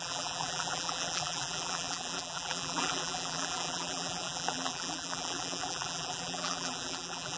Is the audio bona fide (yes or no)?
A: no